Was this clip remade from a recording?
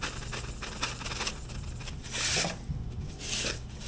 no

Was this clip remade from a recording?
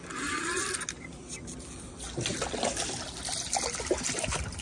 no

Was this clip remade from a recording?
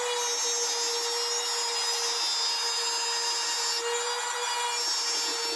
no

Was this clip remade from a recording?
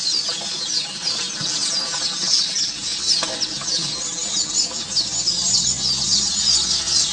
no